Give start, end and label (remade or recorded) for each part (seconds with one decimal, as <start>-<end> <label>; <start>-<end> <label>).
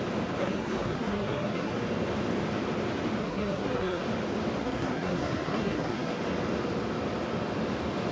0.0-0.4 recorded; 0.4-1.7 remade; 1.7-3.2 recorded; 3.2-4.0 remade; 4.0-4.6 recorded; 4.6-6.2 remade; 6.2-8.1 recorded